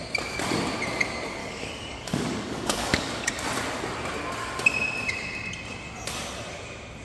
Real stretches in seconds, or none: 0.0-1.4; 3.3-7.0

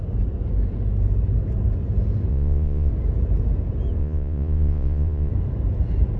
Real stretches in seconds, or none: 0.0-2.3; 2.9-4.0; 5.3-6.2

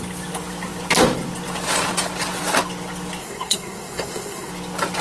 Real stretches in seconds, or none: 0.0-3.2; 4.5-5.0

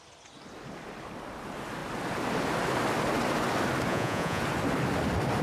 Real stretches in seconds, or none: 0.0-3.9; 4.4-5.4

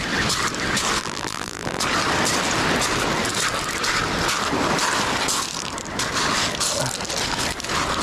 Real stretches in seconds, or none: 0.0-1.0; 1.8-8.0

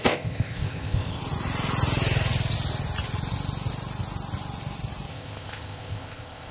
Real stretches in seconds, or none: 1.2-5.1